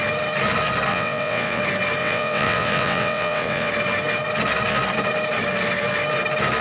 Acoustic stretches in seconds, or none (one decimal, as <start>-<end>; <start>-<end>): 0.0-0.9; 1.6-2.0; 3.7-6.6